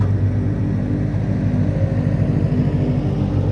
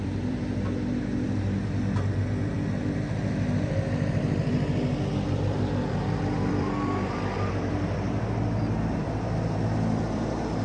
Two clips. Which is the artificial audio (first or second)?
second